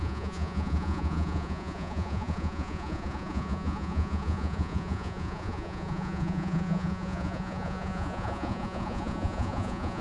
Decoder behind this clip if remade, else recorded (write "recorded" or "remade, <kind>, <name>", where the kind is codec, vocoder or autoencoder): remade, vocoder, Vocos